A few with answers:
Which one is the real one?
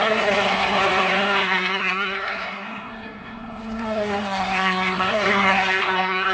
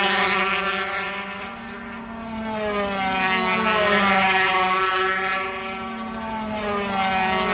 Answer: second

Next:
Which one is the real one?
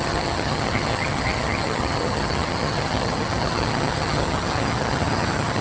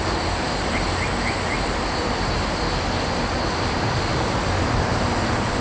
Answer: second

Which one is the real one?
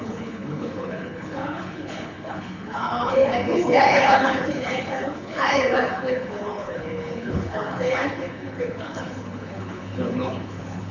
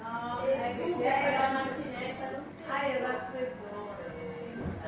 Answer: second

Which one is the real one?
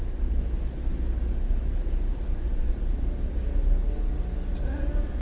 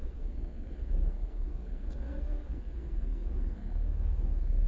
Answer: first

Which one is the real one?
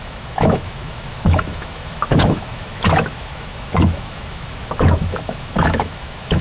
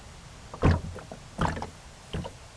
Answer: second